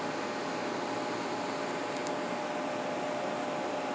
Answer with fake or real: real